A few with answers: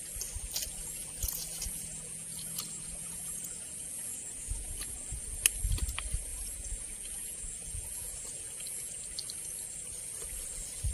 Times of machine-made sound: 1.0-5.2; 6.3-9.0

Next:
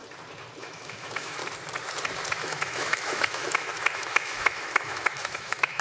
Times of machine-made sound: 0.6-1.4; 2.3-5.8

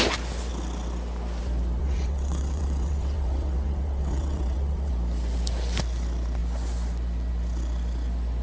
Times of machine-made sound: 1.8-4.9

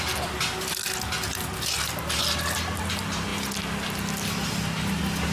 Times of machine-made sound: none

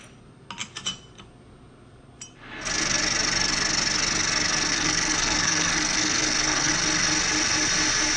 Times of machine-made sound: 4.7-6.7

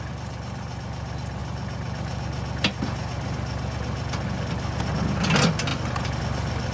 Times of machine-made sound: none

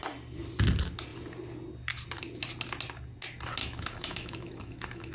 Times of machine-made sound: 3.6-5.1

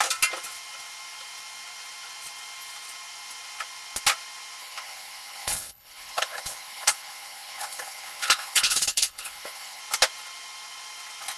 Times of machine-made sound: 4.6-9.8